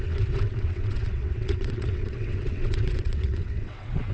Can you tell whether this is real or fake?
fake